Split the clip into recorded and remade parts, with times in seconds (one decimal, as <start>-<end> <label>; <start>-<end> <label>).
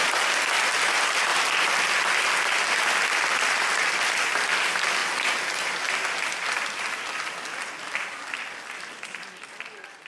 0.0-10.1 recorded